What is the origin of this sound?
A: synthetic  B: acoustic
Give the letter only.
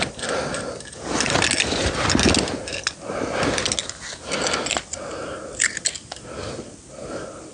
B